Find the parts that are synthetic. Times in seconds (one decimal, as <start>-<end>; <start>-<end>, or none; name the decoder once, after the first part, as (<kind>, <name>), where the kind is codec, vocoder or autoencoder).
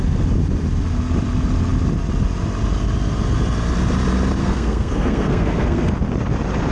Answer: 4.4-5.9 (codec, SNAC)